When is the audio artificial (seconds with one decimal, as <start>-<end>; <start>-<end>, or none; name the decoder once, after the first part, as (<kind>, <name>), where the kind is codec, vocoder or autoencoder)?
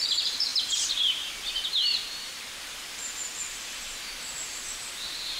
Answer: 0.0-5.4 (vocoder, BigVGAN v2)